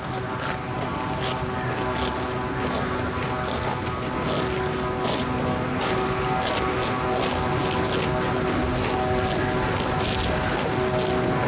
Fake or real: real